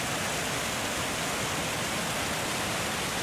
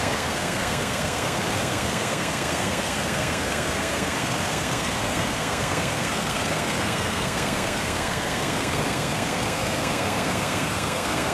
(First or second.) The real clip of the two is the first